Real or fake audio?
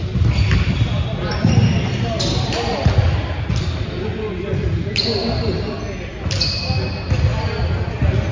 real